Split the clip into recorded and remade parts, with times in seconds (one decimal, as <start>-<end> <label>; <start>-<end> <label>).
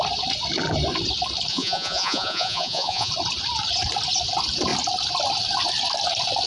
0.0-1.5 recorded; 1.5-3.1 remade; 3.1-6.5 recorded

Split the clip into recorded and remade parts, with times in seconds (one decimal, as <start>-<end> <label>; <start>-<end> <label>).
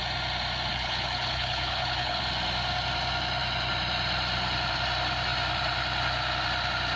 0.0-0.7 recorded; 0.7-2.2 remade; 2.2-7.0 recorded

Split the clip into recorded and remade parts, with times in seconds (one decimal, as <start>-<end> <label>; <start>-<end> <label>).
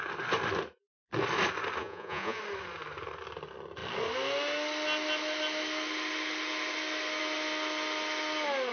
0.0-1.8 recorded; 1.8-2.4 remade; 2.4-8.7 recorded